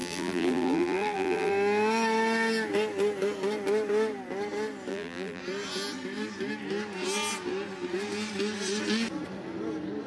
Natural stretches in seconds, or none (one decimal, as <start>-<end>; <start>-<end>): 1.5-4.9; 5.4-10.1